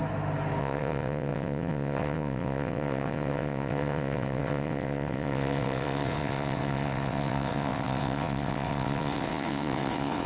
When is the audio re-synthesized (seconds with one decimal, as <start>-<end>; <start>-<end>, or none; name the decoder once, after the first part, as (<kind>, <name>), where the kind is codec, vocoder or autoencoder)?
0.6-10.3 (vocoder, WaveNeXt)